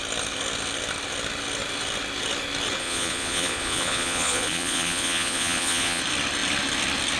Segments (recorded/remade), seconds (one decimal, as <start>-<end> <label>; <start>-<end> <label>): 0.0-2.8 recorded; 2.8-6.0 remade; 6.0-7.2 recorded